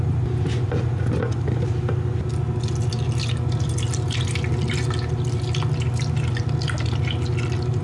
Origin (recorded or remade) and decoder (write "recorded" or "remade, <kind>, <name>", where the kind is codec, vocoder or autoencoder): recorded